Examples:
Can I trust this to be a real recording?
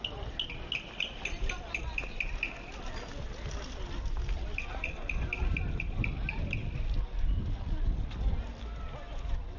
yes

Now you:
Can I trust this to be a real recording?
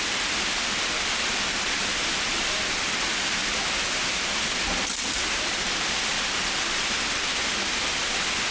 yes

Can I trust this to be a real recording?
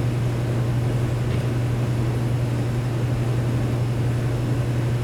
yes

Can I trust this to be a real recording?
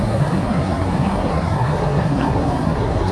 no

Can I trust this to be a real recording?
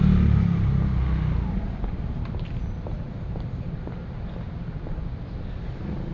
yes